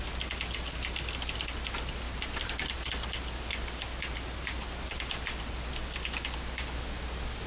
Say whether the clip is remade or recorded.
recorded